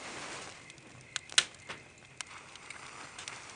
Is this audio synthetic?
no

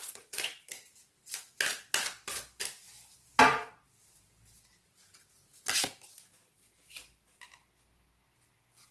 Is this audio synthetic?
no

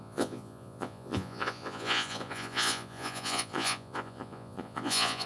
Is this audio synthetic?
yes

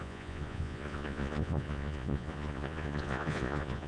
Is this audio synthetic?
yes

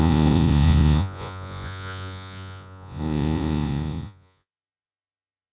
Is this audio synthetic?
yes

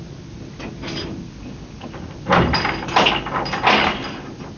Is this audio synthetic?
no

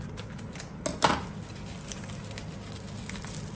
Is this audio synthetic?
no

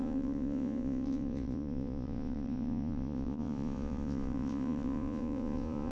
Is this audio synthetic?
yes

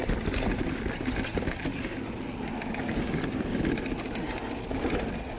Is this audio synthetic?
no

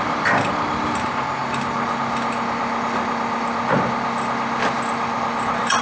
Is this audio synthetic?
no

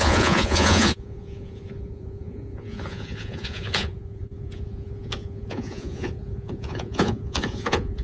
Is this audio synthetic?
yes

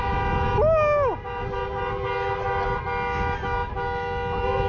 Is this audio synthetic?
no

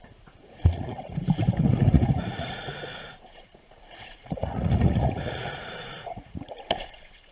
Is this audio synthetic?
yes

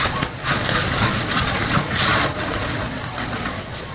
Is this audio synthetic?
yes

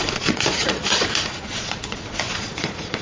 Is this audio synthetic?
yes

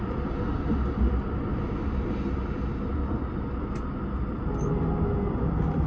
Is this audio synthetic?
no